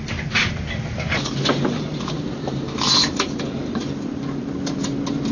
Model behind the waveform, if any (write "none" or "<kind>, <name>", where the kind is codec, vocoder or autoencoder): none